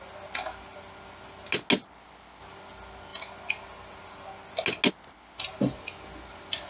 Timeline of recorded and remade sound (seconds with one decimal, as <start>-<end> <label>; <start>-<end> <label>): 0.0-6.7 recorded

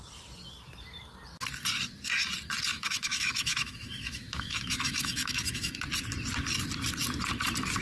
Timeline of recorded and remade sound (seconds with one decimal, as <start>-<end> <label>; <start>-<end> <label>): 0.0-2.7 recorded; 2.7-5.8 remade; 5.8-7.8 recorded

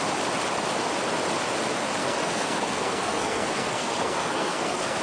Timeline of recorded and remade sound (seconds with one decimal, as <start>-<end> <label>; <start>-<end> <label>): 0.0-2.0 recorded; 2.0-5.0 remade

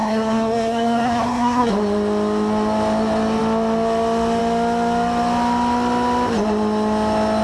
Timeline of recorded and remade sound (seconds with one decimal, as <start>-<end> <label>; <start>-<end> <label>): 0.0-1.7 remade; 1.7-7.4 recorded

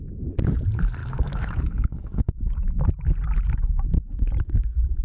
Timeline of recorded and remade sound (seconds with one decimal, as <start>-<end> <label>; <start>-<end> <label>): 0.0-1.0 recorded; 1.0-2.3 remade; 2.3-5.0 recorded

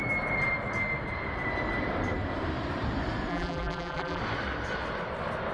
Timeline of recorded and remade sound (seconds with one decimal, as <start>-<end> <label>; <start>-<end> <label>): 0.0-3.3 recorded; 3.3-4.2 remade; 4.2-5.5 recorded

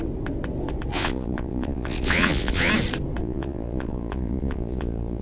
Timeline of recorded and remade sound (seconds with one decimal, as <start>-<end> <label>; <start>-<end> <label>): 0.0-0.9 recorded; 0.9-2.7 remade; 2.7-3.2 recorded; 3.2-5.2 remade